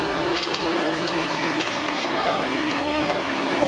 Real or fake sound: fake